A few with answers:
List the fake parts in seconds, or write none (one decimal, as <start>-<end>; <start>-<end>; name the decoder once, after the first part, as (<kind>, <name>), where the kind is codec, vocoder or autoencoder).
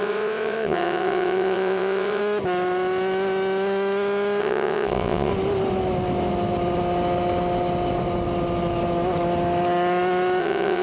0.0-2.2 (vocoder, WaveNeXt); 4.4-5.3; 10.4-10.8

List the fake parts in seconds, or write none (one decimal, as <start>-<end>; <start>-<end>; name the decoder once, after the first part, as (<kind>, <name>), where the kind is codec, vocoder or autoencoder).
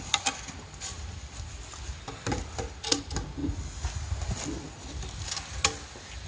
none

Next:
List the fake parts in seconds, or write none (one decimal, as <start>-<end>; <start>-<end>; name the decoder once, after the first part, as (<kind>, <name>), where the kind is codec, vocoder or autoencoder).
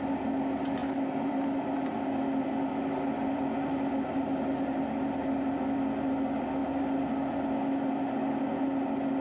none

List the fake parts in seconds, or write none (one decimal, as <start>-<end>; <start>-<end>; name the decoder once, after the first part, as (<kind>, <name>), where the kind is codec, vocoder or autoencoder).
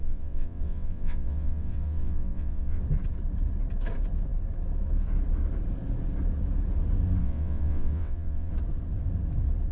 0.0-2.8 (vocoder, WaveNeXt); 7.2-8.5